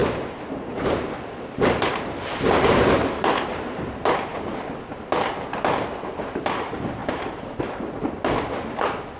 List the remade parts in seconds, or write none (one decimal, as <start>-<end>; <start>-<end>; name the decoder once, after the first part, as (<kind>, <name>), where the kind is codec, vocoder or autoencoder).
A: 0.0-4.3 (vocoder, BigVGAN v2); 6.0-7.0